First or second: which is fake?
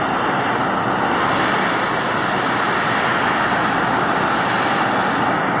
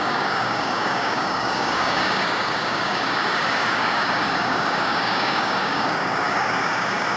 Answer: second